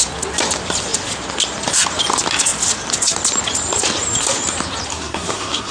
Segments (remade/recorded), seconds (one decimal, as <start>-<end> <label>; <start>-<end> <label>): 0.0-4.9 recorded; 4.9-5.7 remade